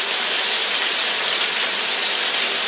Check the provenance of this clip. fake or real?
real